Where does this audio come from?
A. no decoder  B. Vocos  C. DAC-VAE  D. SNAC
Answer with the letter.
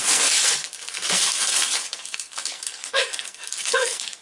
D